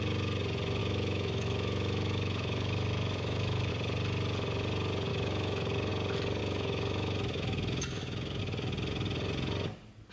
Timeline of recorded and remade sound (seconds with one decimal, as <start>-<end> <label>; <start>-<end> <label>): 0.0-0.8 recorded; 0.8-3.7 remade; 3.7-5.1 recorded; 5.1-5.9 remade; 5.9-6.4 recorded; 6.4-8.4 remade; 8.4-10.1 recorded